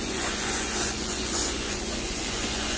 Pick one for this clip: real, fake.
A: fake